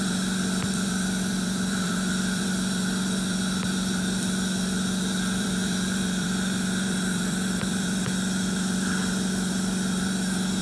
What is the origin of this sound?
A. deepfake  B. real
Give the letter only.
A